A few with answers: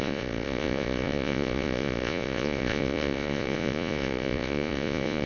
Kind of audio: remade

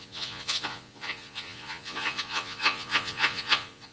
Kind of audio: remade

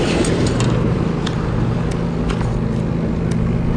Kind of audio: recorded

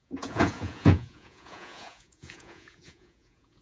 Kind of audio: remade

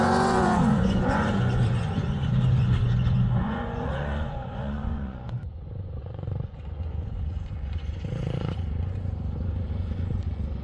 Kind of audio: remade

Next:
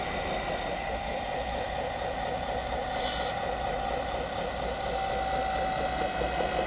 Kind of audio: recorded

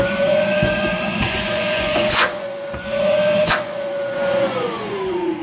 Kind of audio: remade